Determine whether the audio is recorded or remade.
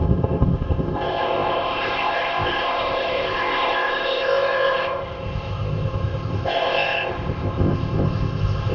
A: remade